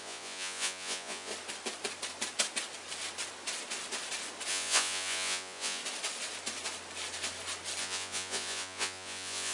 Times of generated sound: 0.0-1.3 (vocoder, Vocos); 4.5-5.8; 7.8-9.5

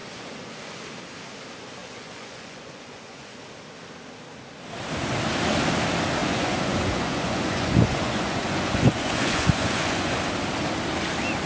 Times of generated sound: 0.0-0.8 (vocoder, Vocos); 1.8-3.4; 6.2-10.2

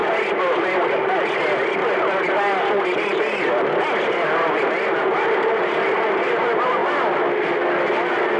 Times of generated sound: none

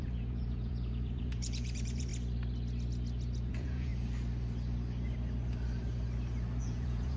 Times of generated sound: 0.0-2.1 (vocoder, Vocos); 3.5-3.9; 6.6-7.2

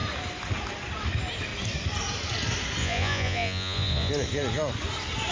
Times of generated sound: 2.8-4.1 (vocoder, Vocos)

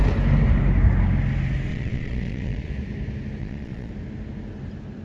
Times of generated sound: 1.7-2.7 (vocoder, Vocos); 3.4-3.9

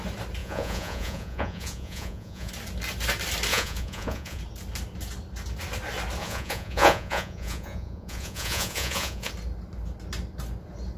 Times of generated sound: 0.4-2.5 (vocoder, Vocos); 3.5-4.4; 6.2-9.3

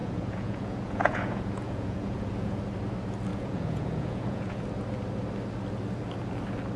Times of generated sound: 0.0-2.6 (vocoder, Vocos); 3.3-4.6